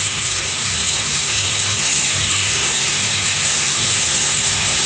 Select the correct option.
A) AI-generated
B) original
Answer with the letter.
A